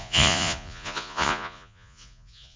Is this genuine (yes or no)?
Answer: no